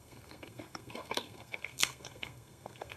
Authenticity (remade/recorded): remade